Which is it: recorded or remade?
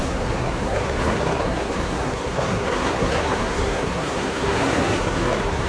remade